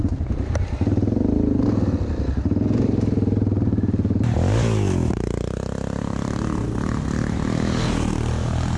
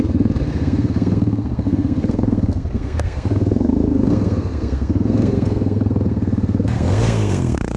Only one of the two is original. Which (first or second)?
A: first